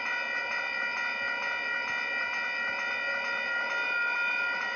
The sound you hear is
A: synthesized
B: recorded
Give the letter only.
B